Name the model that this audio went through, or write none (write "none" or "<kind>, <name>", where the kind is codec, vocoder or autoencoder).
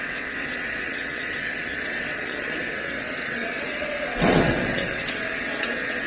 vocoder, WaveNeXt